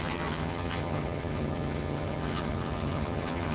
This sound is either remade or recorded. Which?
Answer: remade